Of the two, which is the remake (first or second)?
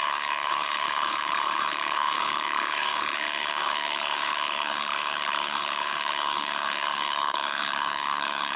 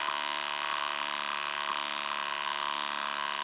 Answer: first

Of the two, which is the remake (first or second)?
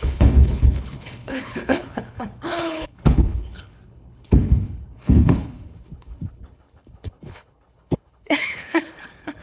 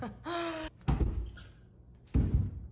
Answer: first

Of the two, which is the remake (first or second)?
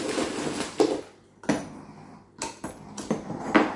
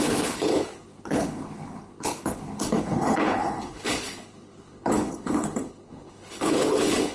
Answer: second